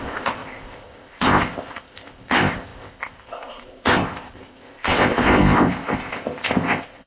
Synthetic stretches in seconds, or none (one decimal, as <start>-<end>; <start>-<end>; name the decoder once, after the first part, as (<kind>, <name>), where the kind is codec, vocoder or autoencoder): 0.0-7.1 (codec, ZipCodec)